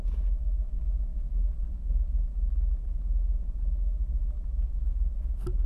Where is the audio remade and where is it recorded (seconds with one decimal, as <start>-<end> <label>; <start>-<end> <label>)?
0.0-5.7 recorded